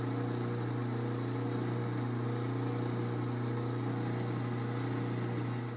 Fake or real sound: real